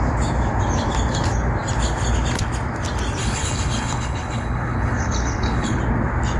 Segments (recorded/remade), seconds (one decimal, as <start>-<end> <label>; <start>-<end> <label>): 0.0-3.2 recorded; 3.2-5.8 remade; 5.8-6.4 recorded